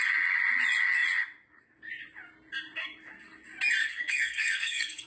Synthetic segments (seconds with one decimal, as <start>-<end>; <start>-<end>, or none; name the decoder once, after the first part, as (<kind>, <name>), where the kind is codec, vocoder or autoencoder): 3.8-5.1 (codec, SNAC)